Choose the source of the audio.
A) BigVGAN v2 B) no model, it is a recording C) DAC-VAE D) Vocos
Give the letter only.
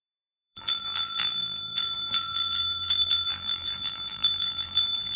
A